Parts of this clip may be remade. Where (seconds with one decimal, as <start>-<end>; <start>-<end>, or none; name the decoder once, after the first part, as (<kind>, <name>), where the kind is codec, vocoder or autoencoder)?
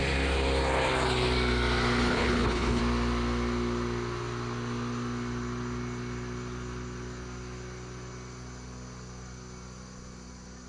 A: 2.1-2.8 (codec, HILCodec)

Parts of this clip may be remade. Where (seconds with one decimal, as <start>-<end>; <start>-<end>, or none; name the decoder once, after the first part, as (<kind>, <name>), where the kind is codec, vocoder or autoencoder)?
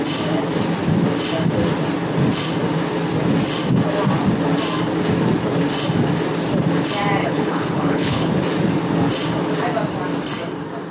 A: 7.2-8.3 (codec, HILCodec)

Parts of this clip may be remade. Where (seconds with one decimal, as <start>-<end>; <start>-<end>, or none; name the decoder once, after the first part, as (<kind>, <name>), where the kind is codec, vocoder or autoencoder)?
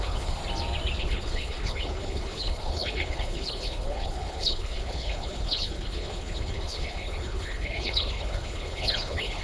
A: 0.0-0.4 (codec, HILCodec); 1.0-9.4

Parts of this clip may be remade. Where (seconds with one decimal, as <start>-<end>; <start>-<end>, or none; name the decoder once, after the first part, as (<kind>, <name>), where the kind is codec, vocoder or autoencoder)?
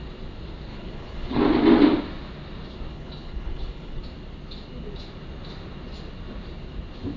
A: 0.7-1.4 (codec, HILCodec); 2.9-4.0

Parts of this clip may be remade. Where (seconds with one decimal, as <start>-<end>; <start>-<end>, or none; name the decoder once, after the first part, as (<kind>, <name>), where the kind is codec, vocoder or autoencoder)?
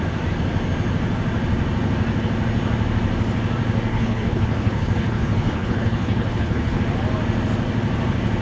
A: 3.9-6.8 (codec, HILCodec)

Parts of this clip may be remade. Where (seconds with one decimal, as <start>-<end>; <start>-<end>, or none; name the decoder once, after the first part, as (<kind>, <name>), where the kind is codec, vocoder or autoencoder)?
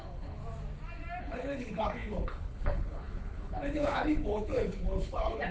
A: 0.0-0.4 (codec, HILCodec); 1.2-5.5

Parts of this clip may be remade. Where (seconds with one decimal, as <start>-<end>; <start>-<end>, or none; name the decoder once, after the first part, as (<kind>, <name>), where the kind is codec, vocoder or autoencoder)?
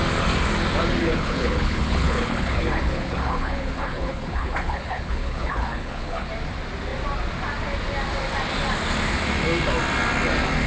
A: 1.0-6.3 (codec, HILCodec)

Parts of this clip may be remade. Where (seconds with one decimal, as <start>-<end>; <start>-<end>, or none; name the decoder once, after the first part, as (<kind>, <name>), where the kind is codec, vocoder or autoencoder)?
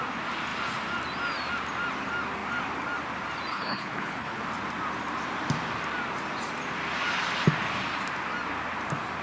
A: 3.5-4.4 (codec, HILCodec)